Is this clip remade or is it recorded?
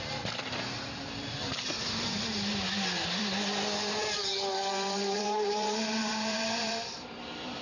remade